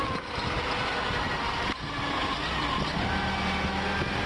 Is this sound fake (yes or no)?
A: no